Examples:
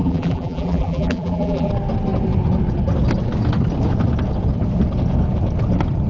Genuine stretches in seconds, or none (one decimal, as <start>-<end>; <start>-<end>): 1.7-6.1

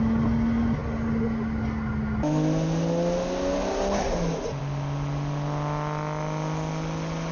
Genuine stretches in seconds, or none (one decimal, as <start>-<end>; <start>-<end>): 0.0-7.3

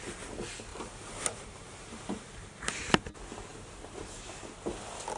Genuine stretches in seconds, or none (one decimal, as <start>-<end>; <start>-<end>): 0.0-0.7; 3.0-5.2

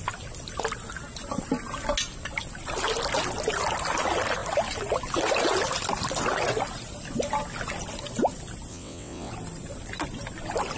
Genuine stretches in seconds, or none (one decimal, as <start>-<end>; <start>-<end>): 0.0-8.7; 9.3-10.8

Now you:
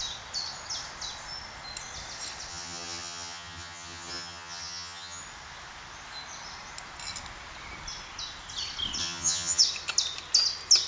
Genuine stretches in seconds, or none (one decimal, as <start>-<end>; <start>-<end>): 0.0-2.5; 5.2-9.0; 9.6-10.9